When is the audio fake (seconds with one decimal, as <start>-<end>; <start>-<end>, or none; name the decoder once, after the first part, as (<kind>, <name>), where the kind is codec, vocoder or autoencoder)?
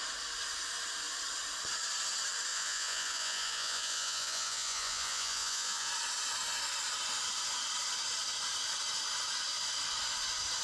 2.5-5.9 (vocoder, Vocos)